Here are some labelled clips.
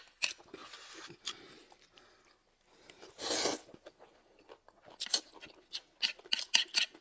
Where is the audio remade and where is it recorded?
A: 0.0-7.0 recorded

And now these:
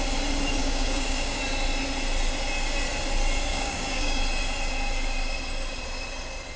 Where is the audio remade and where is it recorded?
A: 0.0-0.6 recorded; 0.6-1.4 remade; 1.4-3.5 recorded; 3.5-4.2 remade; 4.2-6.6 recorded

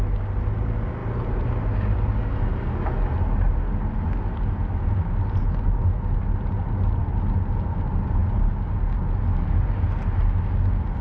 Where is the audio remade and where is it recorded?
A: 0.0-11.0 recorded

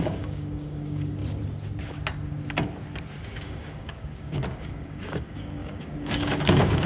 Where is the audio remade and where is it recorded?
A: 0.0-1.2 remade; 1.2-3.2 recorded; 3.2-6.9 remade